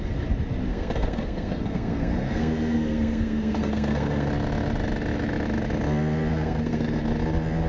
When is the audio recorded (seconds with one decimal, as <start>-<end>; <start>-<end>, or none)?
0.0-0.7; 4.3-6.3; 7.0-7.7